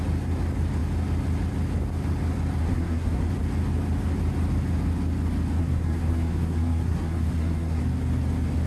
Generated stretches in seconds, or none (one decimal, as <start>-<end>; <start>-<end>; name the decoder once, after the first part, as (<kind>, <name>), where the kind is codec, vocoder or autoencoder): 2.6-3.3 (codec, SNAC); 5.6-7.8